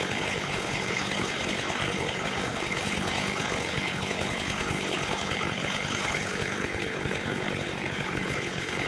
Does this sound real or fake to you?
fake